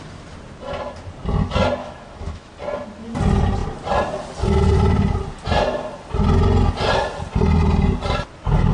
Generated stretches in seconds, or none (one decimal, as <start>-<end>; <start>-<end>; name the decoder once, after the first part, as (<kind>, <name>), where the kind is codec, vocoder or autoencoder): 1.8-2.5 (autoencoder, DAC-VAE)